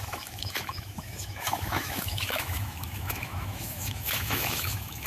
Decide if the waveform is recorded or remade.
remade